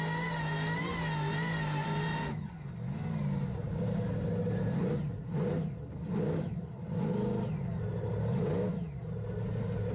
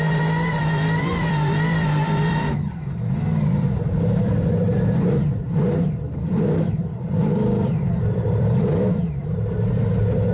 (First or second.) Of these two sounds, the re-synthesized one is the second